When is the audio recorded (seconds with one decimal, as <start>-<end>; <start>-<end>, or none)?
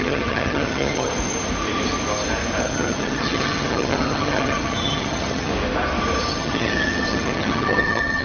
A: 1.1-2.6; 5.5-6.3